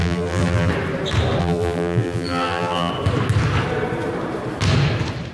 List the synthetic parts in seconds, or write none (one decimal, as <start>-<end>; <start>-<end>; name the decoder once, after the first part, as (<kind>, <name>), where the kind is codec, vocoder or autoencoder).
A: 0.0-0.7 (vocoder, BigVGAN v2); 1.4-2.9